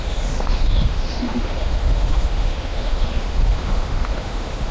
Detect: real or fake fake